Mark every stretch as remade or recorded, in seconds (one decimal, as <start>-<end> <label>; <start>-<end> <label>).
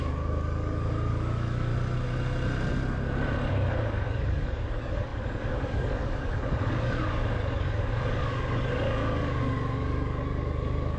0.0-1.7 remade; 1.7-3.5 recorded; 3.5-11.0 remade